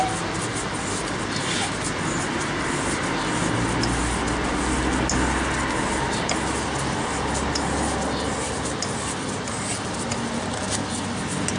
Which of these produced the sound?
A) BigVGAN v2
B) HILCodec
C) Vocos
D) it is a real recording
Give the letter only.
D